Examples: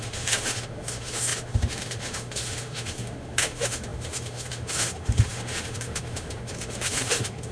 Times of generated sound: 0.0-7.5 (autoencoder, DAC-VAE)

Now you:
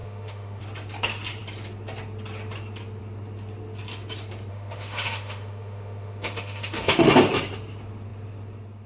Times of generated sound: 0.0-0.6 (autoencoder, DAC-VAE); 4.5-7.1

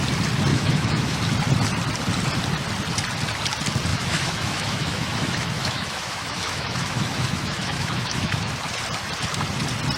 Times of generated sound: 0.5-1.2 (autoencoder, DAC-VAE); 3.9-8.5

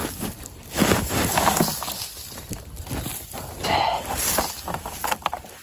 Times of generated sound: none

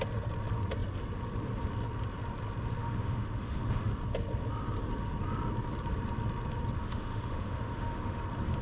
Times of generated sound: 2.8-3.9 (autoencoder, DAC-VAE); 6.8-8.2

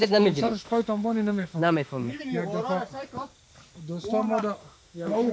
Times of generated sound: 0.0-2.2 (autoencoder, DAC-VAE); 4.6-5.3